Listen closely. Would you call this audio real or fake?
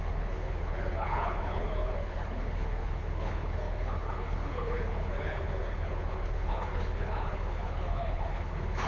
fake